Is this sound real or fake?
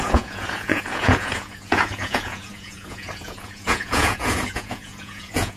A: fake